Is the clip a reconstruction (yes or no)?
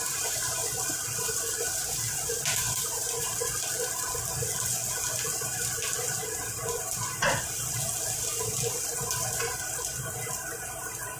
no